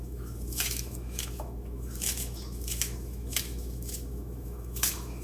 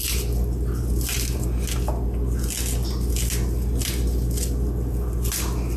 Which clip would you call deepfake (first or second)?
first